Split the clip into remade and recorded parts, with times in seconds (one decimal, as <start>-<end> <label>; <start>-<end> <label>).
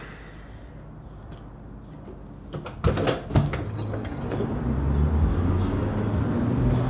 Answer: 0.0-3.3 recorded; 3.3-4.5 remade; 4.5-5.3 recorded; 5.3-6.0 remade; 6.0-6.9 recorded